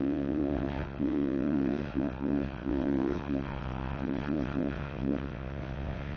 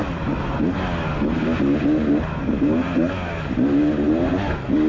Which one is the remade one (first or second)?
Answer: first